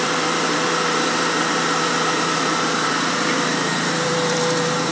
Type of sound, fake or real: fake